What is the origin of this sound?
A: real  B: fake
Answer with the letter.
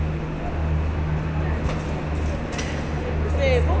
A